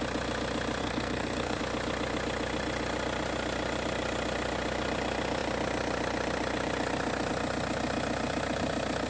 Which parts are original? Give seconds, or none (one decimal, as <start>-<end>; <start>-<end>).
0.0-0.8; 1.6-9.1